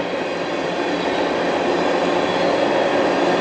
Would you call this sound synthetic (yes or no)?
no